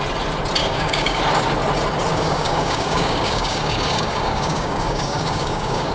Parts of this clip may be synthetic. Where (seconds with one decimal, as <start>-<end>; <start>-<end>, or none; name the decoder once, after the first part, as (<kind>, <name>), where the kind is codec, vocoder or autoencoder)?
0.6-1.2 (codec, DAC); 2.1-5.9